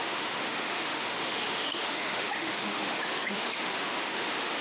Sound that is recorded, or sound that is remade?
remade